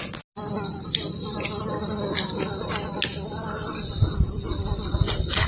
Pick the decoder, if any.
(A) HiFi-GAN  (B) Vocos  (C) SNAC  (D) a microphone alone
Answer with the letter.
D